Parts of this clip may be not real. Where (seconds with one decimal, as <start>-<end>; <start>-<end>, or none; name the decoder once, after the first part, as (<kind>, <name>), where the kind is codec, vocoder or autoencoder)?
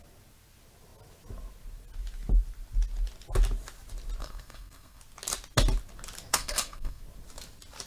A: 4.2-5.0 (codec, SNAC); 6.3-7.0